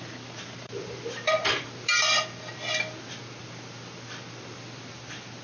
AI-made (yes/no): no